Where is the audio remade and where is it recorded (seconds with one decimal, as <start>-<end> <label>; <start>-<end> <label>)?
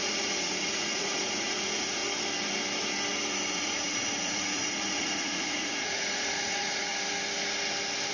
0.0-2.0 remade; 2.0-3.5 recorded; 3.5-6.9 remade; 6.9-8.1 recorded